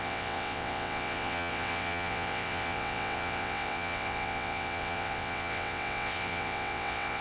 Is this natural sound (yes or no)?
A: no